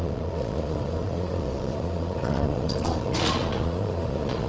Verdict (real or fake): fake